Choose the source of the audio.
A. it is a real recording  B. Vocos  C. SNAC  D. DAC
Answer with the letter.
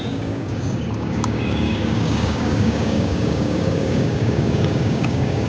D